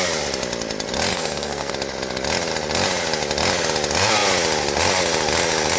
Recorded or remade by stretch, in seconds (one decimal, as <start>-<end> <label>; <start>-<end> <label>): 0.0-1.1 recorded; 1.1-1.7 remade; 1.7-5.8 recorded